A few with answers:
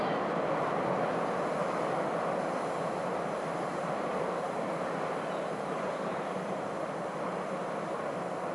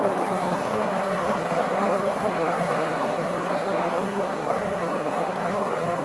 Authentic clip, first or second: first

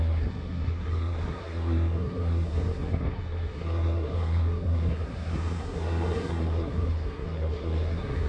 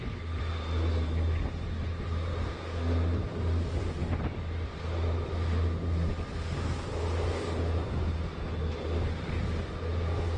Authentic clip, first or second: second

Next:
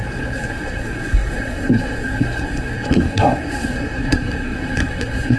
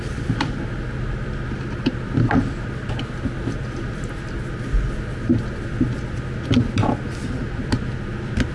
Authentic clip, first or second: second